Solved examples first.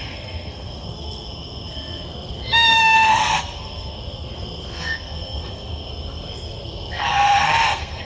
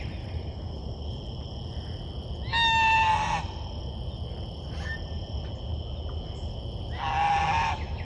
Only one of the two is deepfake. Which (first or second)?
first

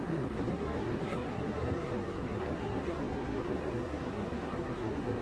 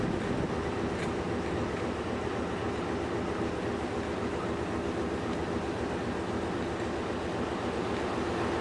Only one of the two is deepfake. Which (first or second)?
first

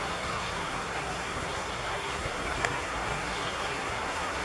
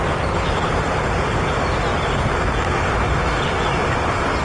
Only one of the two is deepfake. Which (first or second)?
first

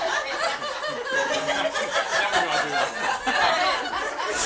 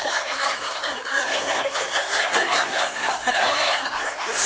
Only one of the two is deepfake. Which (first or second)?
second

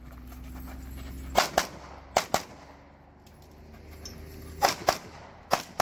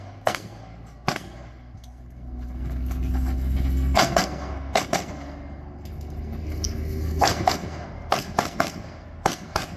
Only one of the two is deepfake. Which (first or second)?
second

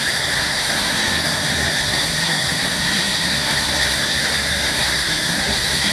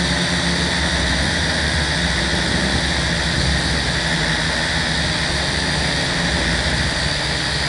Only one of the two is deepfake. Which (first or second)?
first